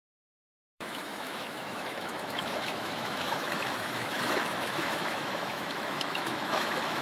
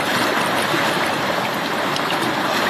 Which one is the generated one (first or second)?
first